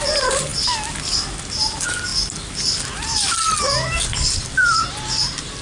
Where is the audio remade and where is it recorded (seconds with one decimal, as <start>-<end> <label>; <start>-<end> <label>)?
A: 0.0-5.6 recorded